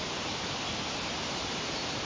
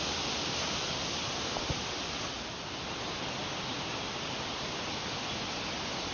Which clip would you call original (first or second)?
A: second